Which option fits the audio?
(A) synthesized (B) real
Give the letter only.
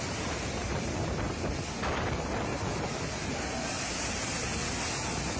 B